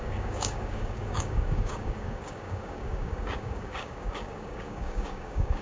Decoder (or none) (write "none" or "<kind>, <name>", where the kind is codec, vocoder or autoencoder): codec, DAC